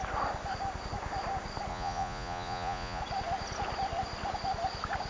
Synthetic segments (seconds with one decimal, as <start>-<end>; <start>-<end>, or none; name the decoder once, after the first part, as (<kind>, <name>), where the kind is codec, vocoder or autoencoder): 1.7-3.0 (vocoder, Vocos)

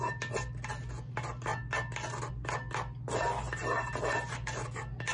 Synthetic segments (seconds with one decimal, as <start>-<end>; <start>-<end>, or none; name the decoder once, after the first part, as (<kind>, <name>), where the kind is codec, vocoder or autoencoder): none

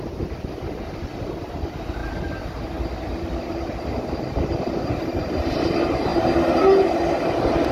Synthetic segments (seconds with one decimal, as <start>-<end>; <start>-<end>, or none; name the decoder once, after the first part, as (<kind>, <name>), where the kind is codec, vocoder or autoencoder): none